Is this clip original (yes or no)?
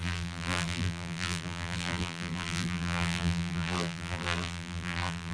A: no